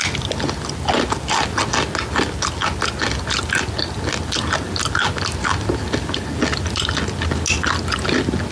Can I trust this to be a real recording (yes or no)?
yes